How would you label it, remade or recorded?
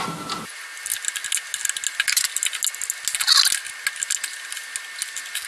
recorded